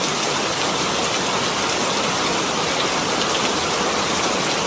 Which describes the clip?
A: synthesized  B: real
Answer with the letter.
B